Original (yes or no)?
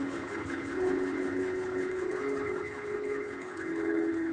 no